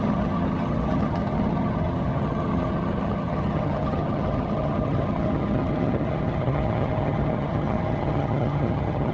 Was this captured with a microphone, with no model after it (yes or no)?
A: no